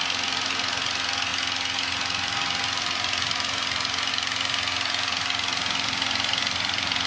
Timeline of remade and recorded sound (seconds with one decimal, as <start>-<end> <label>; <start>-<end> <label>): 0.0-7.1 recorded